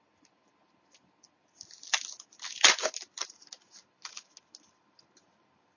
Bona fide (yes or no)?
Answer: yes